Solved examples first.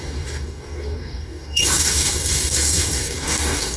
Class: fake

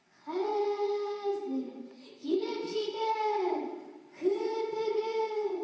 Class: fake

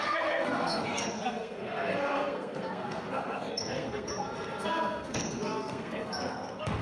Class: fake